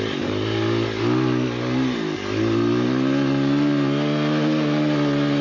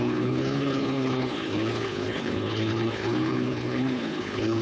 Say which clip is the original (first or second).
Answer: first